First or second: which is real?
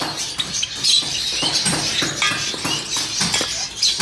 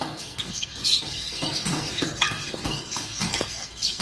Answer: first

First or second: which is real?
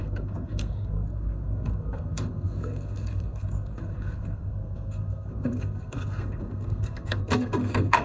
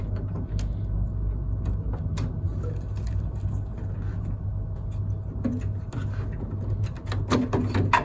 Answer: second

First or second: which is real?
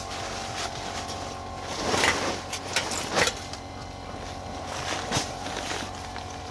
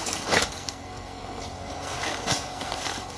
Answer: first